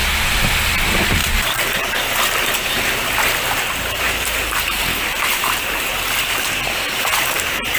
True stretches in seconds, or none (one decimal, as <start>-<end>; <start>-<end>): 0.0-1.2; 5.7-7.8